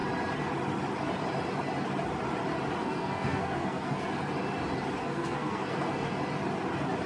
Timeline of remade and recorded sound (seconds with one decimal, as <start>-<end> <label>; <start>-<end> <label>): 0.0-2.8 recorded; 2.8-4.1 remade; 4.1-5.0 recorded; 5.0-6.2 remade; 6.2-7.1 recorded